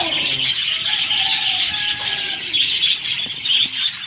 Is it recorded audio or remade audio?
recorded